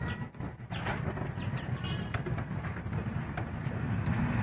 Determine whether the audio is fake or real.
real